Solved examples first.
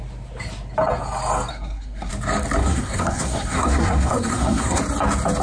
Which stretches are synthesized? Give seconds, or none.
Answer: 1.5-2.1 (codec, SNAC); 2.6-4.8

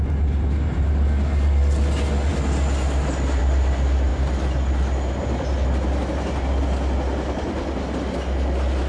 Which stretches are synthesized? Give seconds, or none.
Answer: none

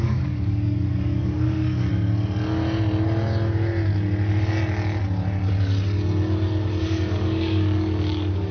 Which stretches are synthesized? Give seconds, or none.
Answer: 0.0-1.9 (codec, DAC); 6.8-8.5

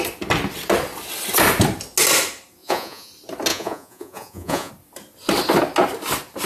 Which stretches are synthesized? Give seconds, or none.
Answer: 2.6-3.1 (vocoder, Vocos); 3.5-4.7

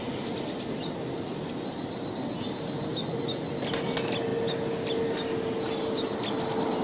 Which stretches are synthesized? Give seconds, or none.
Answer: none

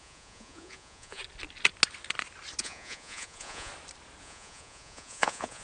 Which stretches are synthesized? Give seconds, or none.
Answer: 0.0-1.2 (vocoder, Vocos); 2.6-3.7; 4.2-5.6

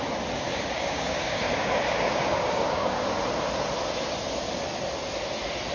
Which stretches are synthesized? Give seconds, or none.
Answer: 0.5-3.1 (codec, DAC)

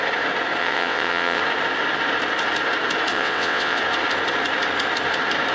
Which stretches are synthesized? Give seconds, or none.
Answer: 0.6-1.4 (vocoder, WaveNeXt); 3.1-3.8